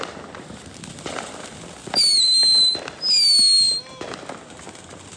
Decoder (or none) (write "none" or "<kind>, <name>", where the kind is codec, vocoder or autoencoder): none